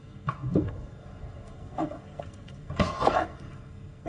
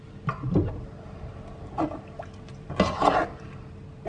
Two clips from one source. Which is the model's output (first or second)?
first